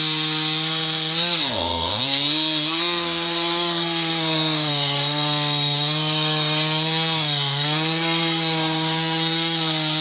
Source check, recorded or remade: remade